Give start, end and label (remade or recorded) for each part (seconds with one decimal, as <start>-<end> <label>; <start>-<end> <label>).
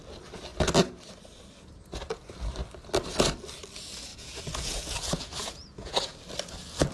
0.0-4.1 recorded; 4.1-6.2 remade; 6.2-6.9 recorded